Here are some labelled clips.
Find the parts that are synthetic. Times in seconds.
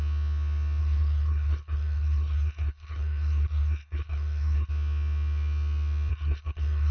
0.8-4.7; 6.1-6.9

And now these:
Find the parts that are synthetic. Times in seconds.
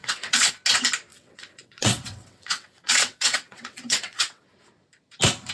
0.0-0.5; 1.1-4.4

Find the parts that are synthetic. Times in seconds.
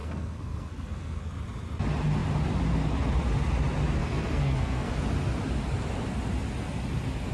0.0-1.3; 4.0-4.9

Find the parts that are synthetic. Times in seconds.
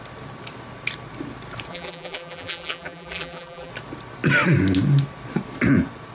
1.7-3.7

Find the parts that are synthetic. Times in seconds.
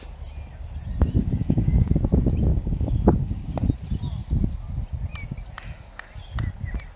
1.2-1.9; 2.5-3.5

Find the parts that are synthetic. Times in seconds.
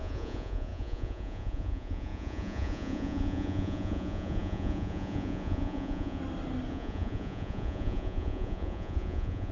0.0-6.2; 6.7-9.5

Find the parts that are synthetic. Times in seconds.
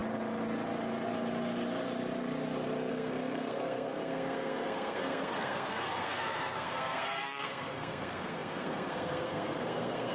2.9-10.1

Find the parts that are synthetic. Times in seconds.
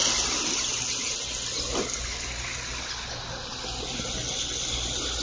none